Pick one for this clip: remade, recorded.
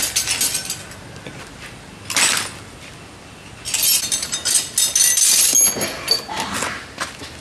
recorded